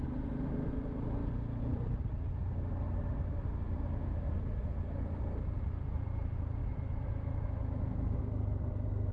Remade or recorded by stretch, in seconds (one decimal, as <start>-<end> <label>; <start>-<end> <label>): 0.0-6.6 recorded; 6.6-8.2 remade; 8.2-9.1 recorded